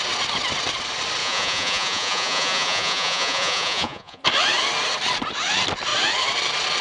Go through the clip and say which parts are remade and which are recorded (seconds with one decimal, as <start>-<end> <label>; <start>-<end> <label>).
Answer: 0.0-1.2 recorded; 1.2-4.2 remade; 4.2-6.8 recorded